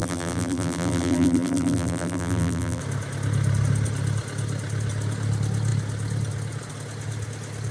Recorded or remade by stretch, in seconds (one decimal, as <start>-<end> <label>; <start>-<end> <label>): 0.0-2.8 remade; 2.8-7.7 recorded